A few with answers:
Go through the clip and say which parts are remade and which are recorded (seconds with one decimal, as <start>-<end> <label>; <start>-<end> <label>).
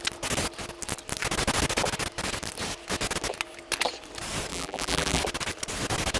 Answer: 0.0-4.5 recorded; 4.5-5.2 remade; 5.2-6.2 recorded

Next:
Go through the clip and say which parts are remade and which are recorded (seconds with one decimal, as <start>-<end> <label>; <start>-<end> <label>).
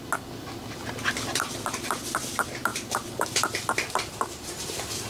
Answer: 0.0-1.3 recorded; 1.3-2.2 remade; 2.2-2.7 recorded; 2.7-3.3 remade; 3.3-5.1 recorded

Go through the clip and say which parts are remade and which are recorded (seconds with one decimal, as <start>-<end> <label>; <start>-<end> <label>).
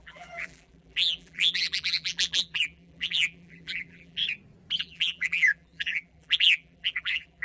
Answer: 0.0-4.2 remade; 4.2-4.8 recorded; 4.8-7.4 remade